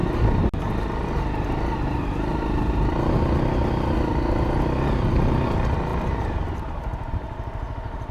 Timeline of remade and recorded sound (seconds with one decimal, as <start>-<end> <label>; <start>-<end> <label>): 0.0-8.1 recorded